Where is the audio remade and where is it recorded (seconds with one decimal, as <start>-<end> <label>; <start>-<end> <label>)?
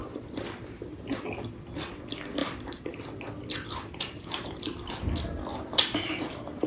0.0-1.1 remade; 1.1-2.4 recorded; 2.4-5.1 remade; 5.1-5.5 recorded; 5.5-6.7 remade